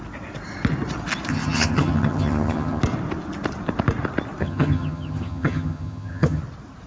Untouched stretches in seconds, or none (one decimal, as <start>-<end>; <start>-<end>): 0.0-1.3; 2.8-4.4; 6.4-6.9